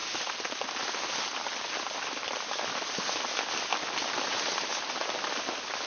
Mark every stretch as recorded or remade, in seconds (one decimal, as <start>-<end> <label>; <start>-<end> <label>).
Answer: 0.0-5.9 recorded